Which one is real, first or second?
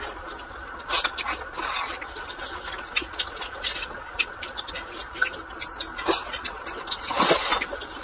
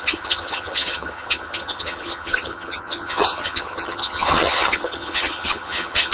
first